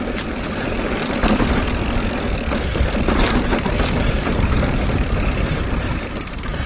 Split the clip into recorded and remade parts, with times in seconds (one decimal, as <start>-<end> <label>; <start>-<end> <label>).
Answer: 0.0-2.7 recorded; 2.7-6.7 remade